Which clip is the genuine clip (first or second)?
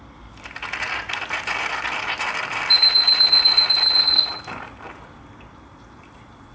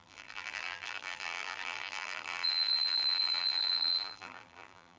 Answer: first